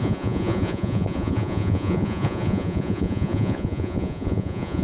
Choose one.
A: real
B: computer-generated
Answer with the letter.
B